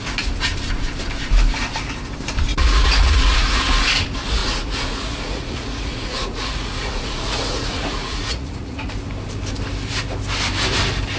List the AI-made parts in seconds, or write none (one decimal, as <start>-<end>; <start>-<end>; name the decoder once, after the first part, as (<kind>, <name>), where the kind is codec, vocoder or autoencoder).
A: 2.5-3.6 (vocoder, Vocos); 4.4-8.9